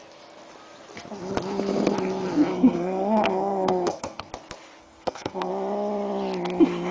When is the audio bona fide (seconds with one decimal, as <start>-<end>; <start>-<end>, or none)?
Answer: 0.0-2.5; 4.3-4.8; 5.5-6.9